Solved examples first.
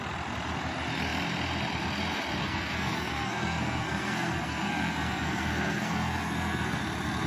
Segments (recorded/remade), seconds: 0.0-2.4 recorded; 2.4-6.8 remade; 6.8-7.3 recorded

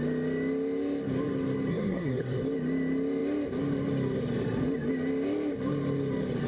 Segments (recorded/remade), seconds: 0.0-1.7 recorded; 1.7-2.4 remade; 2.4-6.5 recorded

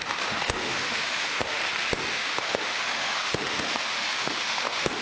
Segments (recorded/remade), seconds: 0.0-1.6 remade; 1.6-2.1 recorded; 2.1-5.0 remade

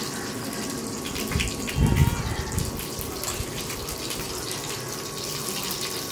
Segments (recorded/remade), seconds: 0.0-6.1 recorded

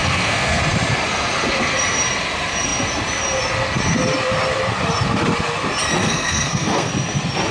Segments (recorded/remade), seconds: 0.0-0.6 remade; 0.6-6.0 recorded; 6.0-6.9 remade; 6.9-7.5 recorded